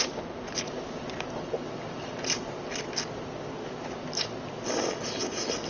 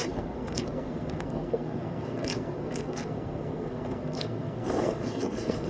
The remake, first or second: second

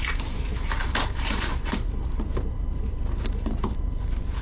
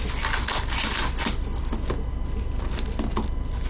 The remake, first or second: first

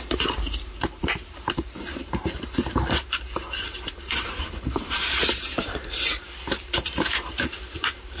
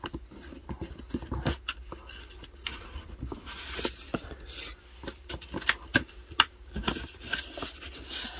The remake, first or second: first